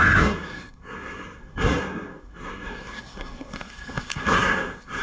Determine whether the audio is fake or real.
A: fake